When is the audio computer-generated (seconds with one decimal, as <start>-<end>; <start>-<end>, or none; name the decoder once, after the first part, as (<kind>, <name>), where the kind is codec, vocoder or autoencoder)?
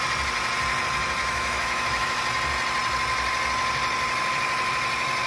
1.2-2.2 (autoencoder, DAC-VAE)